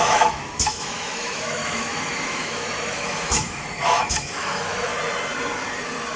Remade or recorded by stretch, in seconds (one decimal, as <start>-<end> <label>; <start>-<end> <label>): 0.0-4.9 remade; 4.9-6.2 recorded